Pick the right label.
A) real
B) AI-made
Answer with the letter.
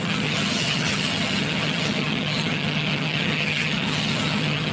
B